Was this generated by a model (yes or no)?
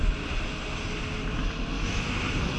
no